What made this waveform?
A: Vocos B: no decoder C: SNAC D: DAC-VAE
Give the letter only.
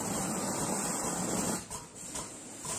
B